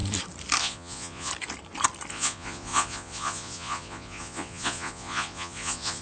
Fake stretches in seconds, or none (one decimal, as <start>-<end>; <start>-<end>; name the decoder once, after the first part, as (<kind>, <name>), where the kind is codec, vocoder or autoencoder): 0.6-1.3 (vocoder, Vocos); 2.1-6.0